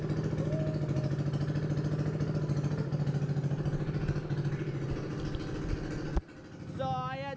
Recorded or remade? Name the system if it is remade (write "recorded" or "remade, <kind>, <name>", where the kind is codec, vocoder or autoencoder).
recorded